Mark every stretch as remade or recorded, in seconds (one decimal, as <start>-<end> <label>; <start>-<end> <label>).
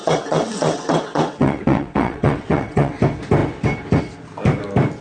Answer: 0.0-3.0 remade; 3.0-5.0 recorded